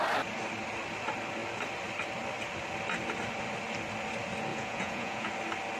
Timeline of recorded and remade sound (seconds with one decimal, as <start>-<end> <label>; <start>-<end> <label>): 0.0-4.5 recorded; 4.5-5.3 remade; 5.3-5.8 recorded